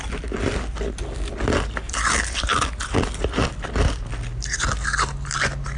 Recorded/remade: recorded